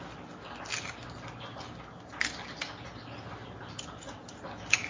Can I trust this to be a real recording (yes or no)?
yes